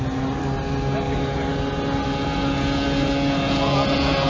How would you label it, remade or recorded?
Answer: recorded